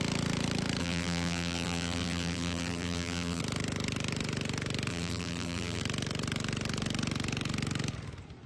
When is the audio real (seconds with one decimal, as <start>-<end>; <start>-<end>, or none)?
0.0-0.8; 3.4-4.9; 5.8-8.5